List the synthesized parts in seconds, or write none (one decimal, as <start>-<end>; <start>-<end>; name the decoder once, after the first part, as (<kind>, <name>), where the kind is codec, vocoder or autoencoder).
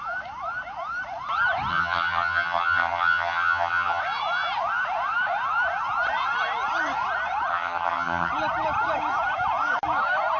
1.7-4.0 (vocoder, HiFi-GAN); 7.5-8.3